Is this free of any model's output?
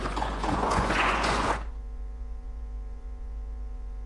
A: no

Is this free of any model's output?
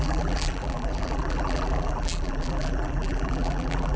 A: no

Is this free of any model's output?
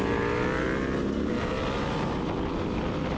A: yes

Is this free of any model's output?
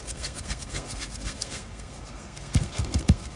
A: no